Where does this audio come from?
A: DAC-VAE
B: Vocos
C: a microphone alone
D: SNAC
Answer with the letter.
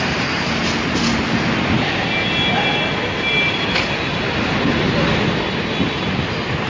C